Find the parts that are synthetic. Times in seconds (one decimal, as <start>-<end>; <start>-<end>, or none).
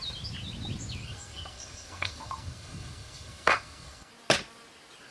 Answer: 1.0-4.1